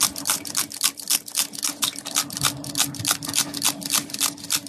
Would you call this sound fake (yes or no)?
no